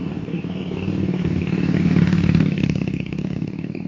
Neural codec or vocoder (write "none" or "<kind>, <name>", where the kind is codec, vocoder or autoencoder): codec, DAC